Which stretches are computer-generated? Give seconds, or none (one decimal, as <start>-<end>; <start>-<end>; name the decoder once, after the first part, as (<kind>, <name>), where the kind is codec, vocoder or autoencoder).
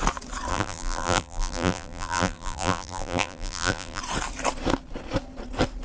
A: 0.5-4.0 (vocoder, BigVGAN v2)